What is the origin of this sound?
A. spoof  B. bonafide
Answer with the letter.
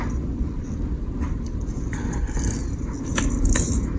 B